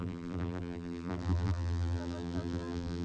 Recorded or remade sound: remade